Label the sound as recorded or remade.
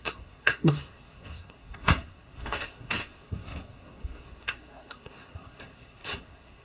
remade